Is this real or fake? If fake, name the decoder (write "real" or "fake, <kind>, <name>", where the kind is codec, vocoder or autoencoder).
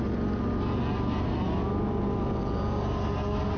real